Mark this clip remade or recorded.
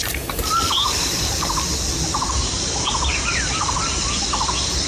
recorded